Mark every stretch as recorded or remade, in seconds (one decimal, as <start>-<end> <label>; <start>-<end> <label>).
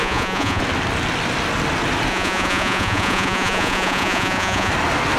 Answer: 0.0-0.6 remade; 0.6-2.1 recorded; 2.1-4.7 remade; 4.7-5.2 recorded